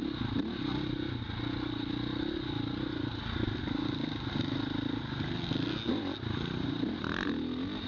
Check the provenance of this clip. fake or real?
real